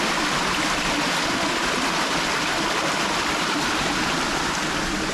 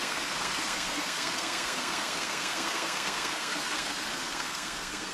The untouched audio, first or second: first